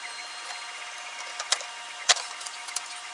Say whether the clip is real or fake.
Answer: fake